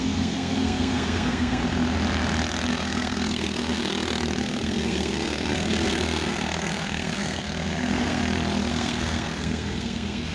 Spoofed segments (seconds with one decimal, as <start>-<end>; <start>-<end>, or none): 0.0-1.6; 2.7-3.9; 4.4-8.2; 8.7-10.3